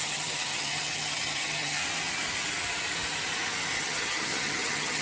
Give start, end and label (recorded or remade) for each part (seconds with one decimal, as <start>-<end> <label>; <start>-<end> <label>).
0.0-1.8 remade; 1.8-3.8 recorded; 3.8-5.0 remade